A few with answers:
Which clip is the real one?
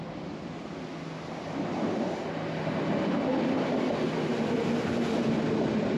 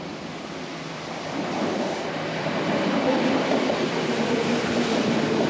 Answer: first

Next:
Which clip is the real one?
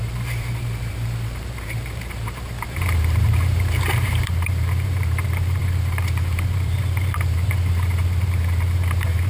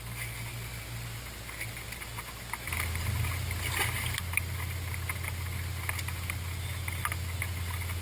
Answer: second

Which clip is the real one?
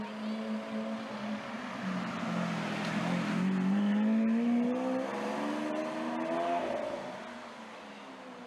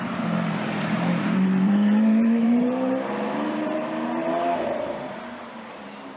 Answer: first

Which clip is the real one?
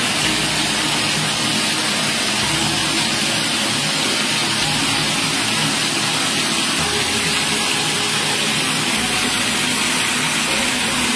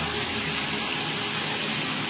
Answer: first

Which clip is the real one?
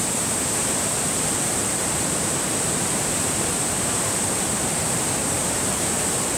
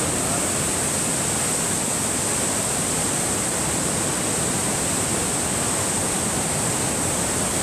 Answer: second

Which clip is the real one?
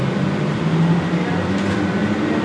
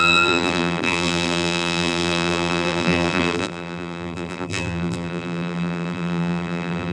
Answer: first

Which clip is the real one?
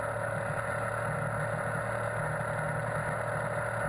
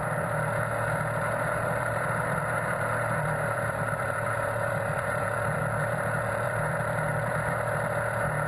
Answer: first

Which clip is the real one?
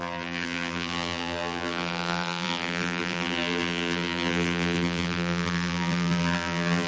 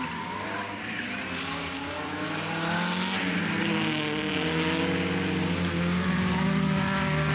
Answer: second